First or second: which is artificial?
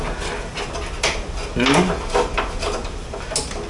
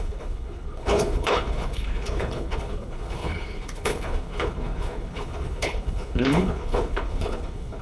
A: second